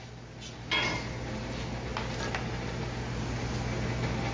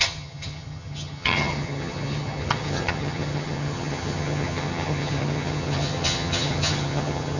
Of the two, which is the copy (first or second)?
second